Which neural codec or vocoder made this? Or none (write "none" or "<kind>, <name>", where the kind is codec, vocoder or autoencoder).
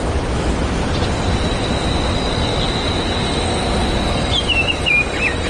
none